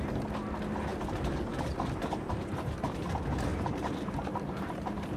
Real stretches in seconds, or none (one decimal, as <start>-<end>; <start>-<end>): 0.0-3.5